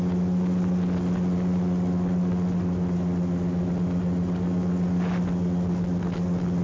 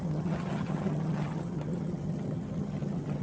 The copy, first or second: second